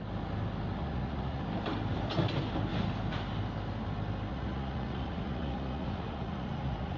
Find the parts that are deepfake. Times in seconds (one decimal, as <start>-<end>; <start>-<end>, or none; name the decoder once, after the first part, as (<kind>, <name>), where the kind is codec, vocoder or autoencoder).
0.8-1.4 (vocoder, Vocos); 4.3-7.0